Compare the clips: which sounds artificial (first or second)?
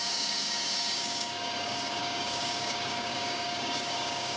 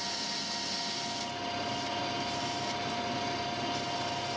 first